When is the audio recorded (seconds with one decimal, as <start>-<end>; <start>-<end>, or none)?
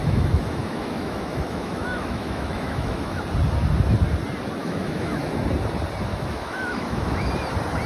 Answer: 3.2-4.6; 5.3-6.1; 7.3-7.9